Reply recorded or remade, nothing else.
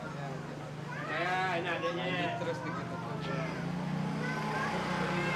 recorded